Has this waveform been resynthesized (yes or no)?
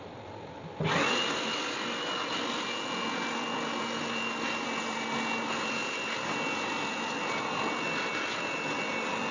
no